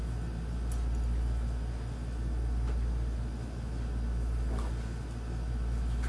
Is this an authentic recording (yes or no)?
yes